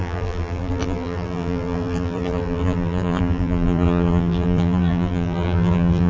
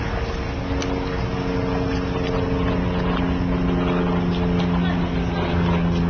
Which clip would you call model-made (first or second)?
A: first